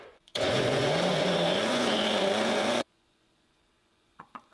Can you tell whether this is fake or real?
fake